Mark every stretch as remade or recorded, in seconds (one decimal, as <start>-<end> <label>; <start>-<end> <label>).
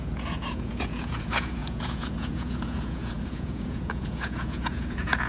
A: 0.0-5.3 remade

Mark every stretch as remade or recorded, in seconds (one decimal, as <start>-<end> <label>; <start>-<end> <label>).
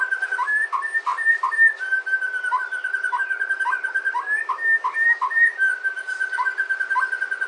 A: 0.0-7.5 recorded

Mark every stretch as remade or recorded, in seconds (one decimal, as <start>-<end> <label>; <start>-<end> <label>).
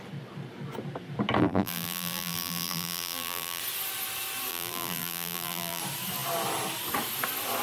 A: 0.0-1.4 recorded; 1.4-3.6 remade; 3.6-4.5 recorded; 4.5-5.8 remade; 5.8-7.6 recorded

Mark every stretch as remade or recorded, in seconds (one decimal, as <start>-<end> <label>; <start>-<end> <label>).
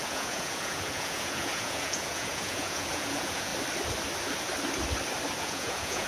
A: 0.0-3.5 remade; 3.5-5.4 recorded; 5.4-6.1 remade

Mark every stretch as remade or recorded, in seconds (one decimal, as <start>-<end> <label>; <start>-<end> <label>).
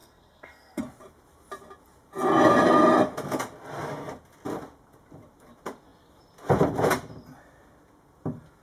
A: 0.0-0.8 remade; 0.8-8.6 recorded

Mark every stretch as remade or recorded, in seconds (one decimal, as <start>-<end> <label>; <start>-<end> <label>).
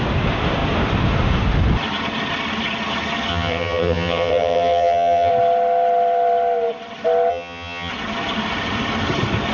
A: 0.0-3.3 recorded; 3.3-5.3 remade; 5.3-7.3 recorded; 7.3-7.9 remade; 7.9-9.5 recorded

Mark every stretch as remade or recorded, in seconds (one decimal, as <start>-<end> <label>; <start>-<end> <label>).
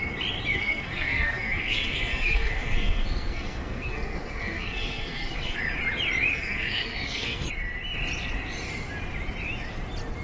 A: 0.0-0.5 recorded; 0.5-5.6 remade; 5.6-6.3 recorded; 6.3-7.5 remade; 7.5-10.2 recorded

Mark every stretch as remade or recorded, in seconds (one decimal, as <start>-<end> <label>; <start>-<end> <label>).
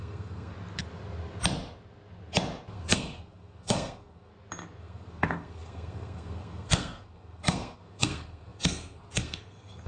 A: 0.0-0.5 remade; 0.5-2.7 recorded; 2.7-4.3 remade; 4.3-4.8 recorded; 4.8-9.9 remade